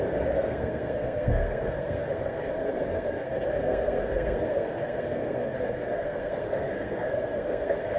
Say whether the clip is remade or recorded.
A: remade